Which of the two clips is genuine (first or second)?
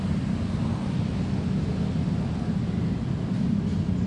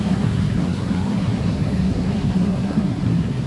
first